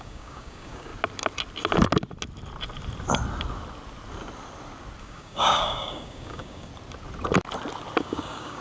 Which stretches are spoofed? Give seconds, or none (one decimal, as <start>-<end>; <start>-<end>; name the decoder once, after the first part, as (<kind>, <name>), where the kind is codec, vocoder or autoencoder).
0.0-0.9 (codec, DAC); 5.0-6.7; 8.0-8.6